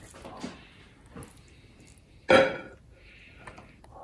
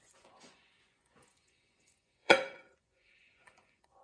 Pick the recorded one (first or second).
first